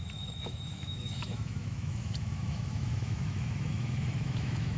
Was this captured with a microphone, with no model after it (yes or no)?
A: no